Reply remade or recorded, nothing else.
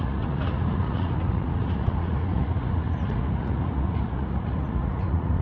remade